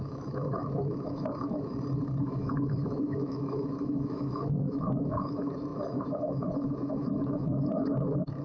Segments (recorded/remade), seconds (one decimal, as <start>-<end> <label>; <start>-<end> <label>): 0.0-1.7 remade; 1.7-2.2 recorded; 2.2-8.4 remade